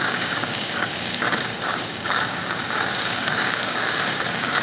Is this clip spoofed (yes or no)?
yes